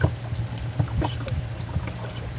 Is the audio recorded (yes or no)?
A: yes